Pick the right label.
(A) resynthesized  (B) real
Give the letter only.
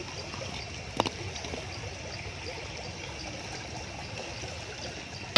B